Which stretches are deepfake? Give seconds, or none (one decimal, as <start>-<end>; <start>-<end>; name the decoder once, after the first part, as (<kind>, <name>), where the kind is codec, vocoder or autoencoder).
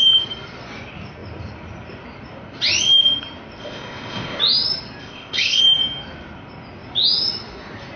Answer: 3.6-4.4 (codec, ZipCodec); 5.0-5.6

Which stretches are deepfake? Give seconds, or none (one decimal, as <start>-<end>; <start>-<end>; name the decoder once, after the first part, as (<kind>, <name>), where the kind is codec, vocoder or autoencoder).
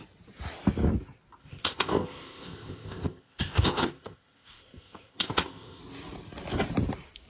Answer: 1.4-5.8 (codec, ZipCodec)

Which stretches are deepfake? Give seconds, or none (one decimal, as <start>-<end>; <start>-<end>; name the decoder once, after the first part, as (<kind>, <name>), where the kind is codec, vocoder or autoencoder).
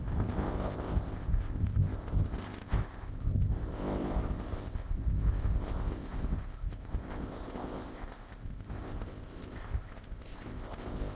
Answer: 0.0-11.2 (codec, ZipCodec)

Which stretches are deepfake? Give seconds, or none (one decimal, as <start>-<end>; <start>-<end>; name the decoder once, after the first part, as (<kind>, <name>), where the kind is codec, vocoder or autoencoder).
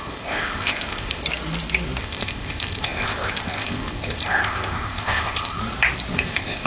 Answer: 0.0-1.2 (codec, ZipCodec); 2.0-5.6; 6.1-6.7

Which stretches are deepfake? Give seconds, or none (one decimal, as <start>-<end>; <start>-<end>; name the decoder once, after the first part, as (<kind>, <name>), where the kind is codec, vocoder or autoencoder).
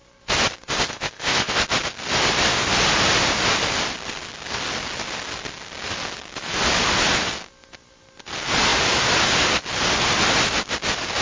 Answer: 0.9-1.6 (codec, ZipCodec)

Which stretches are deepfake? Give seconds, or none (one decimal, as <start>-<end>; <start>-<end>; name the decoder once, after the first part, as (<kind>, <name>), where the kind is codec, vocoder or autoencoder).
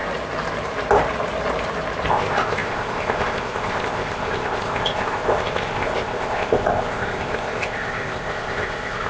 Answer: 2.1-9.1 (codec, ZipCodec)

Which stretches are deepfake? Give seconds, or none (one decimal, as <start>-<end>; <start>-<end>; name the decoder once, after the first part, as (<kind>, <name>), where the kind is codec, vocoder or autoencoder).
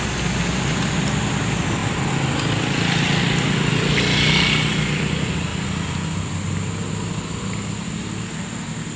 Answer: none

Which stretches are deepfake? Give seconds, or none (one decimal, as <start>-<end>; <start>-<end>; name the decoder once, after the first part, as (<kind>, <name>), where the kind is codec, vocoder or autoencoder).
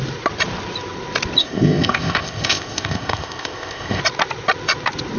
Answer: 1.4-4.0 (codec, ZipCodec)